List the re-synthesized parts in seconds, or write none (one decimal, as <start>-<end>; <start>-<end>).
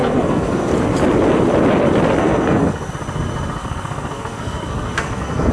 0.0-0.7; 2.2-2.9; 3.6-5.5